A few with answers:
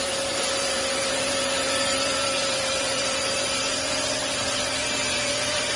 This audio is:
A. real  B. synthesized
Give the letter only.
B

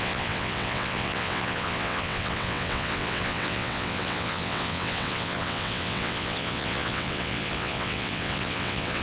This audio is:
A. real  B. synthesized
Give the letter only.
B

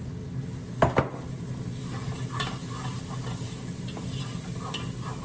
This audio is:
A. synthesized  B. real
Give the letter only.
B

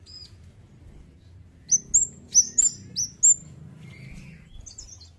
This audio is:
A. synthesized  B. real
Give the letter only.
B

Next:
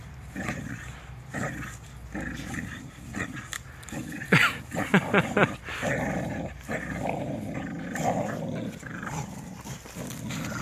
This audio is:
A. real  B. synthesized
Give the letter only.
B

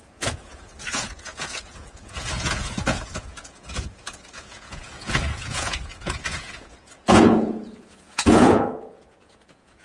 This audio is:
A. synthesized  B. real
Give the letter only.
A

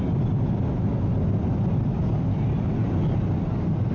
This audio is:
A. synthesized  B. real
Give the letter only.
B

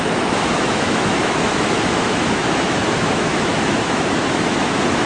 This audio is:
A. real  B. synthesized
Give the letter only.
B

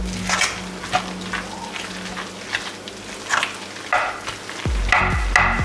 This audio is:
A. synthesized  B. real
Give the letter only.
B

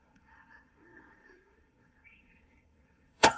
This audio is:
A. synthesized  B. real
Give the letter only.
A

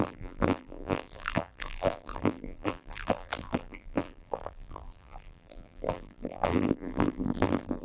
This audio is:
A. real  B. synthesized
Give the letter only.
B